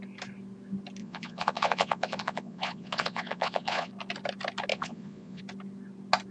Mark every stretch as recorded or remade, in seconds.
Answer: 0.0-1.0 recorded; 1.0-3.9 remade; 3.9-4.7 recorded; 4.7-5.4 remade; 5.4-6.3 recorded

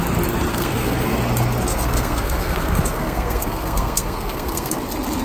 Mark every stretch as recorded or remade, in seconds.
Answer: 0.0-0.5 recorded; 0.5-1.2 remade; 1.2-1.7 recorded; 1.7-4.8 remade; 4.8-5.2 recorded